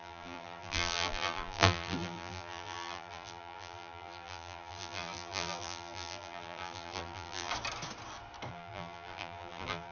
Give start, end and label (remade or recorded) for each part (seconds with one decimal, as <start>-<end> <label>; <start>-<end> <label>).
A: 0.0-7.5 remade; 7.5-8.5 recorded; 8.5-9.9 remade